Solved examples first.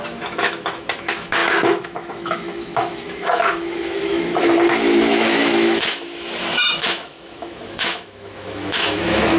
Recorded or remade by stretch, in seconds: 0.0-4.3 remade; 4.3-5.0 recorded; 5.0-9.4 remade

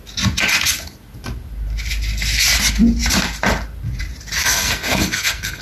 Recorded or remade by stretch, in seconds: 0.0-4.4 recorded; 4.4-5.6 remade

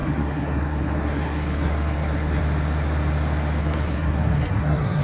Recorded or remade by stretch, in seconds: 0.0-2.4 remade; 2.4-3.6 recorded; 3.6-5.0 remade

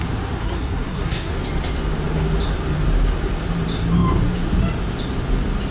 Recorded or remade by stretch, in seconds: 0.0-0.4 recorded; 0.4-1.3 remade; 1.3-5.7 recorded

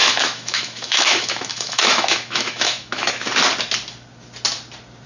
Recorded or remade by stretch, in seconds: 0.0-3.1 remade; 3.1-5.1 recorded

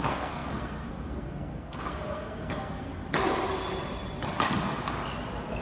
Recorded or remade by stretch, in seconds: 0.0-2.9 remade; 2.9-5.6 recorded

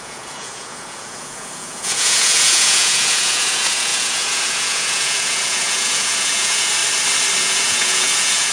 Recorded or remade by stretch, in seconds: 0.0-6.8 remade; 6.8-7.4 recorded; 7.4-8.5 remade

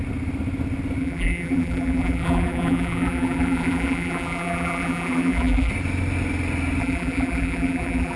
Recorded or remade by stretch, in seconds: 0.0-1.0 recorded; 1.0-5.7 remade; 5.7-6.8 recorded; 6.8-8.2 remade